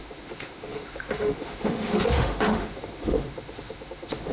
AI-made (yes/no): yes